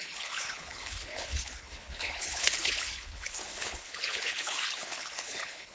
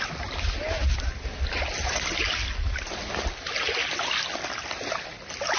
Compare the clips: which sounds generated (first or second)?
first